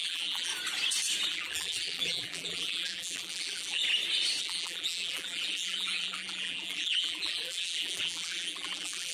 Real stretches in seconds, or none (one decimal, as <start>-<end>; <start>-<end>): 0.5-1.3; 3.8-4.4